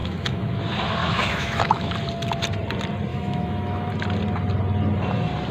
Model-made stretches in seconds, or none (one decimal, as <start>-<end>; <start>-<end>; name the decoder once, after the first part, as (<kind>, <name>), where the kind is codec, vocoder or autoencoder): 0.0-0.6 (autoencoder, DAC-VAE); 1.0-1.9; 3.1-3.9